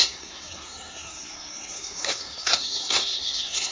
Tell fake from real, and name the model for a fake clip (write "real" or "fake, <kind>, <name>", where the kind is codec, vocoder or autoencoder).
fake, codec, SNAC